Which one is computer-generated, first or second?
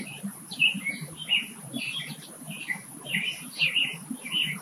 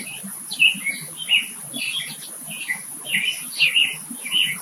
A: first